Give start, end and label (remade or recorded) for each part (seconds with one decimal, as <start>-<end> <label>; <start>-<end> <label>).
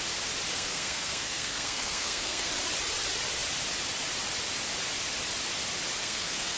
0.0-0.5 recorded; 0.5-2.5 remade; 2.5-6.0 recorded; 6.0-6.6 remade